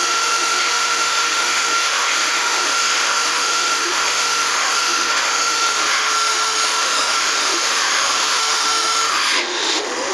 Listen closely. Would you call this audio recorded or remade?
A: remade